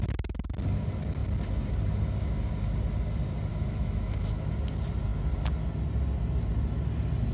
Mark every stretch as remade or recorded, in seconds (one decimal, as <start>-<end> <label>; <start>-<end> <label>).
0.0-3.5 recorded; 3.5-4.5 remade; 4.5-7.3 recorded